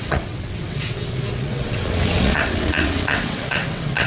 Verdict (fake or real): fake